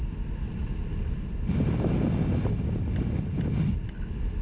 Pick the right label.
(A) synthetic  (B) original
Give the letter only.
B